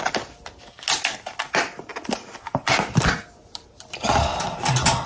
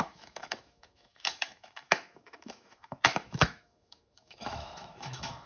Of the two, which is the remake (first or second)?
second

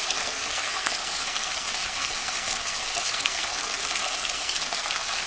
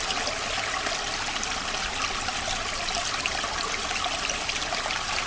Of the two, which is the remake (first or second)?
first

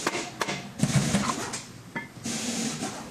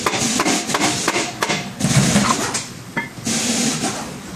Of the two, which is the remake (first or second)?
second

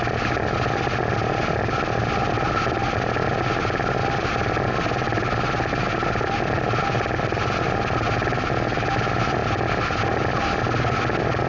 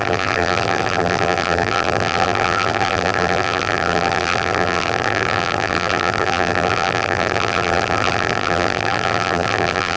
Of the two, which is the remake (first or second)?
second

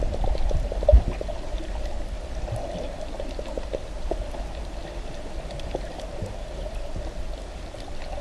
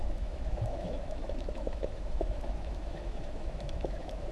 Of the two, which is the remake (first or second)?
second